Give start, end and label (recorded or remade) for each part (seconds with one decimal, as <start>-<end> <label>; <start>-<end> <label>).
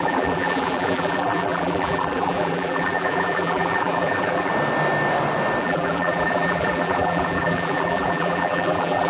0.0-4.5 remade; 4.5-5.6 recorded; 5.6-9.1 remade